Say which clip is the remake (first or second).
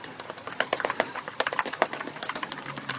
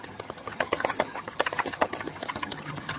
second